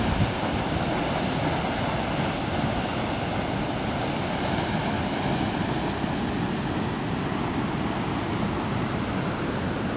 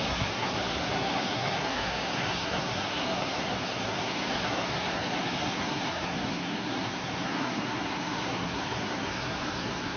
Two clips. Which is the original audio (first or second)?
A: first